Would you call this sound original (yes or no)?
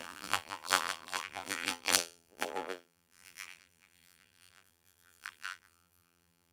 no